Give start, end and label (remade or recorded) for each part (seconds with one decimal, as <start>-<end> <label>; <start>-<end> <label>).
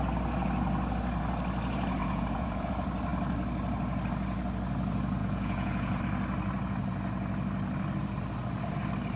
0.0-2.0 recorded; 2.0-2.7 remade; 2.7-5.2 recorded; 5.2-6.0 remade; 6.0-9.2 recorded